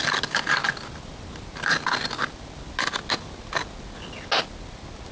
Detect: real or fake real